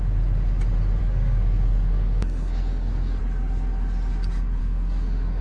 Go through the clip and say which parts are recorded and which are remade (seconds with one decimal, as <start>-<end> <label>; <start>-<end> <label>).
0.0-1.0 recorded; 1.0-3.2 remade; 3.2-4.6 recorded; 4.6-5.4 remade